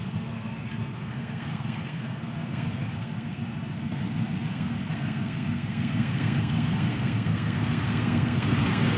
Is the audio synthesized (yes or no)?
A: yes